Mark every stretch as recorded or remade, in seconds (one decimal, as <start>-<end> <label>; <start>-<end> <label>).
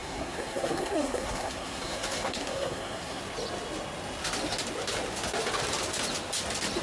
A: 0.0-3.2 remade; 3.2-6.8 recorded